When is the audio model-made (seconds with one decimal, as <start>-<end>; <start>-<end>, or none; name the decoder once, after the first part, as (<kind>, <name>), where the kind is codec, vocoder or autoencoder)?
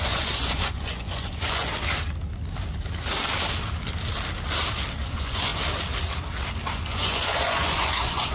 0.0-1.7 (vocoder, Vocos); 5.0-5.5; 6.9-8.3